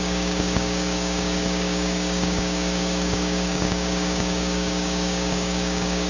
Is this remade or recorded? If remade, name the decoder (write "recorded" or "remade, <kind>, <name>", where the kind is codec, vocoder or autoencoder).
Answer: remade, codec, DAC